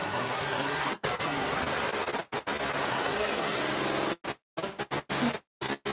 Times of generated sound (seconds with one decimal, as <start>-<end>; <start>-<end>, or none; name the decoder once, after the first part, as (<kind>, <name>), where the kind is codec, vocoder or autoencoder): 0.0-1.6 (codec, SNAC); 2.9-3.6

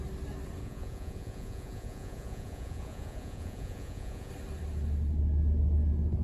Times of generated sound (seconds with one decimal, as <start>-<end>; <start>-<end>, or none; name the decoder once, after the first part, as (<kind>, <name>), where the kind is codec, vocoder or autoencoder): 0.6-4.3 (vocoder, Vocos)